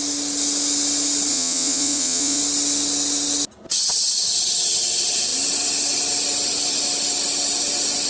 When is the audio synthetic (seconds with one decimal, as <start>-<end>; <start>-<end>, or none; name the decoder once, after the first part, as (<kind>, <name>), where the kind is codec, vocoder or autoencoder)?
1.3-2.4 (vocoder, Vocos)